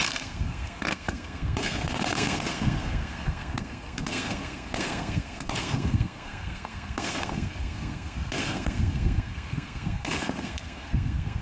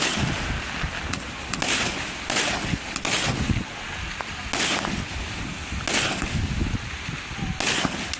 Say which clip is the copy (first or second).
first